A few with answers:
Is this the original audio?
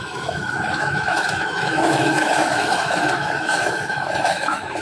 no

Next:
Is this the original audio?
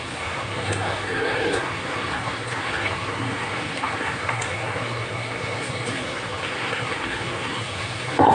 no